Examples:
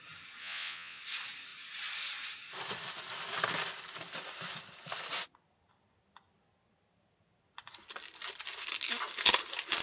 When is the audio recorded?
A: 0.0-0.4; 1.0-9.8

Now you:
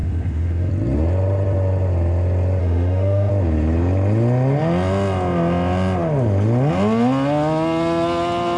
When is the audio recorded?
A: 0.7-2.6; 3.3-8.6

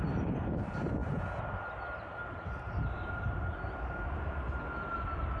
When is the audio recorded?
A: 0.0-5.4

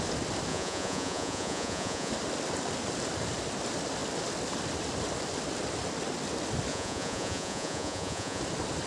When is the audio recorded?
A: 0.0-0.5; 2.1-6.7; 8.4-8.9

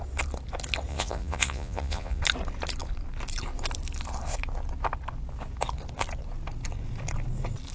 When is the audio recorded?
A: 0.0-0.9; 2.2-7.7

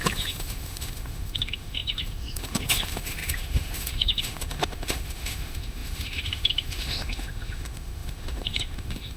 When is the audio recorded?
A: none

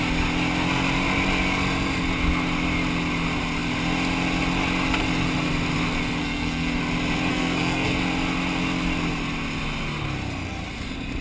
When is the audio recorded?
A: 0.0-6.2; 6.8-7.3; 8.0-11.2